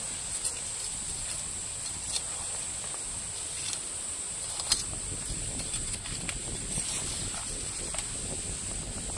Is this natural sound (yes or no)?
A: yes